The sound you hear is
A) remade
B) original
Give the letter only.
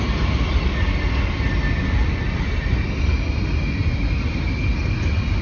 B